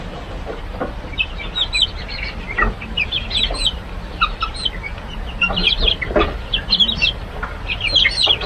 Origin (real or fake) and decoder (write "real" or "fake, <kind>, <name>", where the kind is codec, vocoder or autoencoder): fake, vocoder, BigVGAN v2